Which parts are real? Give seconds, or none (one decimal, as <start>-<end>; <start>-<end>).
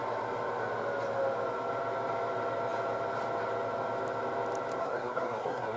0.0-4.8